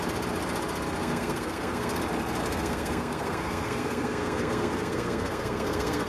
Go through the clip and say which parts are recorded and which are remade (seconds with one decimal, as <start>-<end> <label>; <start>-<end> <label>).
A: 0.0-1.0 recorded; 1.0-2.0 remade; 2.0-2.4 recorded; 2.4-6.1 remade